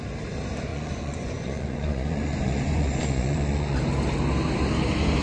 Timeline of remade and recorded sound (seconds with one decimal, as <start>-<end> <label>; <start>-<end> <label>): 0.0-0.7 recorded; 0.7-3.8 remade; 3.8-5.2 recorded